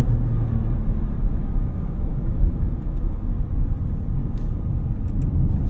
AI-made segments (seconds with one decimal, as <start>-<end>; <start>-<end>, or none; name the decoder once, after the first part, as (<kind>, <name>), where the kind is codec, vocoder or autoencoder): 1.4-3.2 (autoencoder, DAC-VAE)